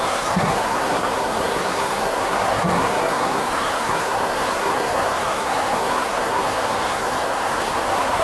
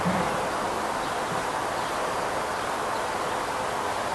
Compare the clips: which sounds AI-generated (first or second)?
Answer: first